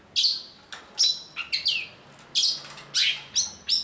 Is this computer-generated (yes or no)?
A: no